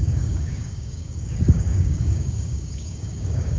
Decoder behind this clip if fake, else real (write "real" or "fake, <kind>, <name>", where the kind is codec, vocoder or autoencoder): fake, codec, DAC